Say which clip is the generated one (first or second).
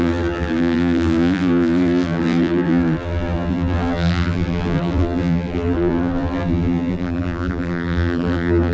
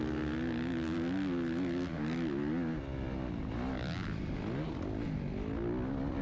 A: first